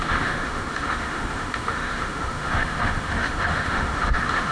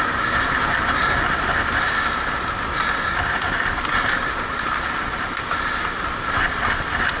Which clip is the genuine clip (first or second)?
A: second